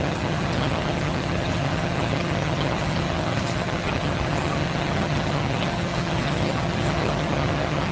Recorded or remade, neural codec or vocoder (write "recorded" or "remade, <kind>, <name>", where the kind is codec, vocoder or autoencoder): remade, vocoder, HiFi-GAN